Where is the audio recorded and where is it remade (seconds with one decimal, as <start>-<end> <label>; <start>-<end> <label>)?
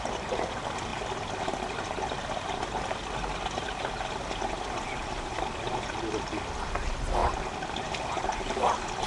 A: 0.0-9.1 recorded